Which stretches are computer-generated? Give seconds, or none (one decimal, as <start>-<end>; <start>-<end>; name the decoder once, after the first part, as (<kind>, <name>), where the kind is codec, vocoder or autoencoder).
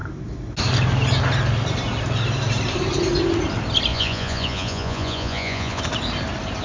3.9-5.8 (vocoder, Vocos)